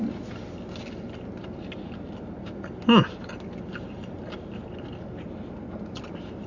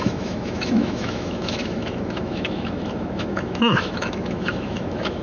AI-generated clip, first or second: second